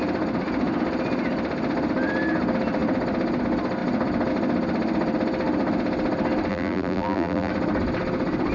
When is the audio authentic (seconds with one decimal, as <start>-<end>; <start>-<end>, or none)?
0.0-6.5; 7.5-8.5